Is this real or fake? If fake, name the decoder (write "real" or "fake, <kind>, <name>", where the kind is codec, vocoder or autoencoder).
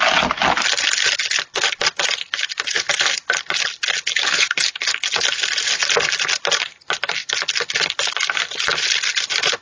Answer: real